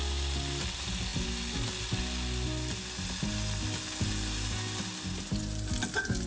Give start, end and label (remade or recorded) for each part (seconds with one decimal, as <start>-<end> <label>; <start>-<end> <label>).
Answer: 0.0-6.3 recorded